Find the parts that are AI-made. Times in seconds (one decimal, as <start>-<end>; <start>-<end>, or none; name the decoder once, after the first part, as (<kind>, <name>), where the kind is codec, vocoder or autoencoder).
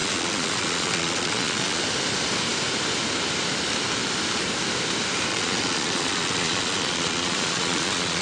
0.0-1.8 (vocoder, Vocos); 5.3-8.2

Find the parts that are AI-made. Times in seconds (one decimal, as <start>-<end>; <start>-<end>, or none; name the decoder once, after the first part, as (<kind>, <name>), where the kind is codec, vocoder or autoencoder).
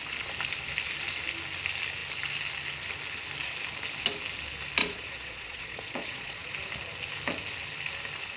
4.8-6.5 (vocoder, Vocos)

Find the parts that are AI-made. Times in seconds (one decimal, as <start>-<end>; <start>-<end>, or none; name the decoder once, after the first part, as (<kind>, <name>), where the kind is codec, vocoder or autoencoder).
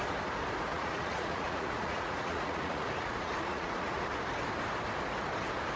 0.7-4.2 (vocoder, Vocos)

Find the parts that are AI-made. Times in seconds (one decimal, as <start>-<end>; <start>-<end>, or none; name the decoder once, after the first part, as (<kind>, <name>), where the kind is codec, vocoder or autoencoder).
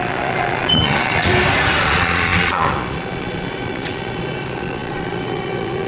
0.0-1.3 (vocoder, Vocos); 1.8-5.9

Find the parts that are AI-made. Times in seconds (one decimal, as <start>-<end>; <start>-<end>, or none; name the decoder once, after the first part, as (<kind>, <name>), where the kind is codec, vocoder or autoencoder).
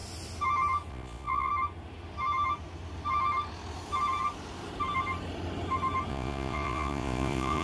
0.9-1.5 (vocoder, Vocos); 6.1-7.6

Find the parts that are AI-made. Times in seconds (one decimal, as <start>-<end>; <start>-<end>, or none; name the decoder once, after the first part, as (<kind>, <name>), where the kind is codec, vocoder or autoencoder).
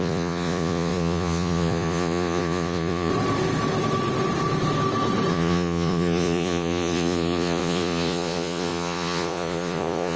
0.0-3.1 (vocoder, Vocos); 5.3-10.2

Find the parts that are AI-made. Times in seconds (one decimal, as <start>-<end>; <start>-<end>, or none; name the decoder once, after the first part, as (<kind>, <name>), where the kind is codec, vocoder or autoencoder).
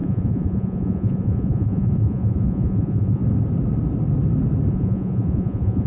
0.0-3.2 (vocoder, Vocos); 4.7-5.9